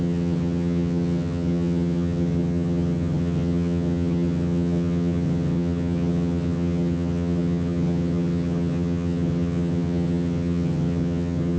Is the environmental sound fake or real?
fake